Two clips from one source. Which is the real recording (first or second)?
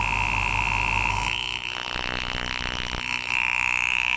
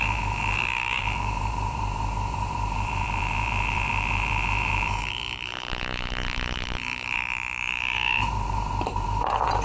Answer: first